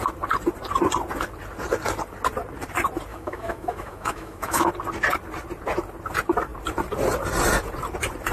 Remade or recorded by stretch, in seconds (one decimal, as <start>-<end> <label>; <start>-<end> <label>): 0.0-3.1 recorded; 3.1-4.7 remade; 4.7-8.3 recorded

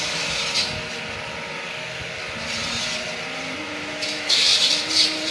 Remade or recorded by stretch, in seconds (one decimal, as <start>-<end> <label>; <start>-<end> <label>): 0.0-0.4 remade; 0.4-3.6 recorded; 3.6-4.5 remade; 4.5-5.3 recorded

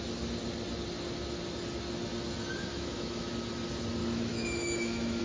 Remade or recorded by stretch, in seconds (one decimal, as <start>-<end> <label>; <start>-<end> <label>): 0.0-2.7 recorded; 2.7-3.3 remade; 3.3-4.0 recorded; 4.0-5.2 remade

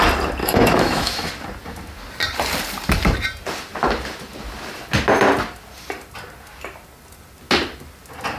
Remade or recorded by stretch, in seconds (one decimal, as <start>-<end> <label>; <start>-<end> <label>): 0.0-0.4 recorded; 0.4-1.3 remade; 1.3-8.4 recorded